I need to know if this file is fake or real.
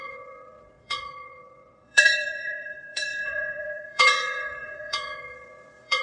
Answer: fake